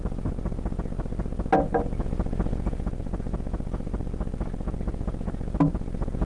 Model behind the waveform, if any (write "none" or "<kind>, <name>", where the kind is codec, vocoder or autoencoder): none